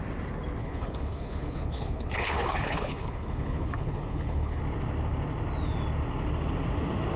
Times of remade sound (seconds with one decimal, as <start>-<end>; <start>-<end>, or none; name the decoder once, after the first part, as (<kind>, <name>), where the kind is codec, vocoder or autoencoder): 0.6-4.6 (codec, HILCodec)